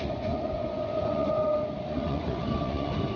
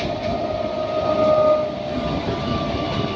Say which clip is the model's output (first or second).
first